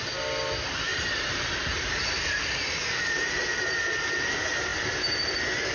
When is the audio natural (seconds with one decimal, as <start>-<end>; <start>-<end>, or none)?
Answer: 0.0-0.9; 4.3-5.7